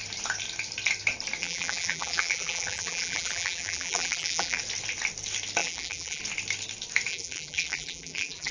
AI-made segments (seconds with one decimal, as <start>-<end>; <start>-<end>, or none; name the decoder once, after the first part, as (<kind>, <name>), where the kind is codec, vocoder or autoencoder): 1.4-4.6 (vocoder, BigVGAN v2); 5.6-6.2; 7.1-8.5